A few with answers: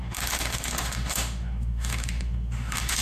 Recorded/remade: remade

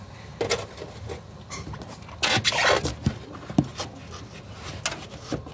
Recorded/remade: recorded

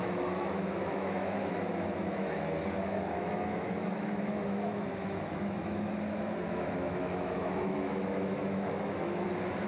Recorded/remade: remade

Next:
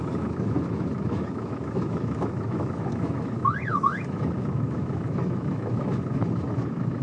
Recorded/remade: remade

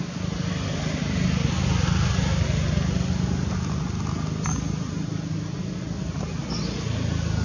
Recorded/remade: recorded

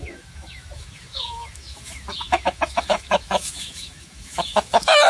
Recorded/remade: remade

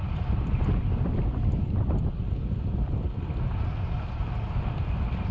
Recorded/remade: recorded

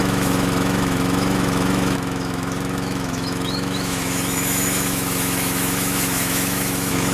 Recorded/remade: remade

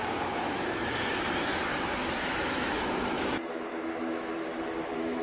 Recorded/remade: remade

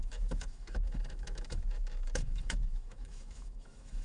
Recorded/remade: remade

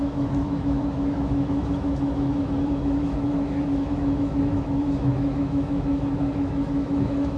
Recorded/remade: remade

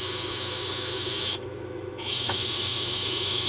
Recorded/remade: remade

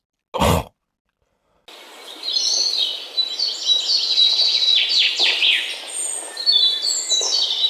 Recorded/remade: recorded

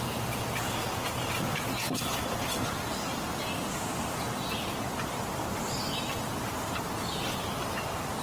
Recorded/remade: recorded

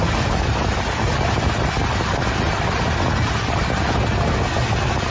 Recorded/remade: recorded